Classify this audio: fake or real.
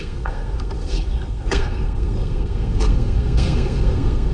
fake